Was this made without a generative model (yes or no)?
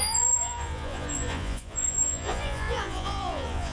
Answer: no